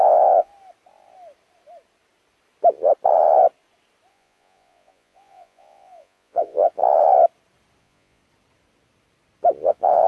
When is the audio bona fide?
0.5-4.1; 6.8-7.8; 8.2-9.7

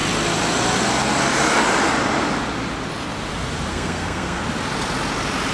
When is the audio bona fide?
0.0-3.7; 4.4-5.5

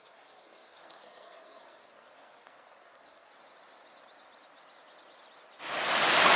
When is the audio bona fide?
3.3-6.4

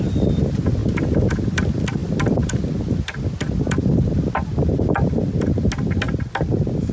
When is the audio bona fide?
0.0-6.9

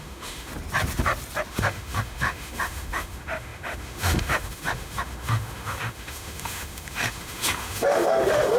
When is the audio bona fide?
0.5-1.5